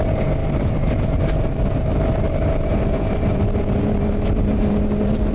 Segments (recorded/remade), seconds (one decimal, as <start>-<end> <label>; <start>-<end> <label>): 0.0-5.3 remade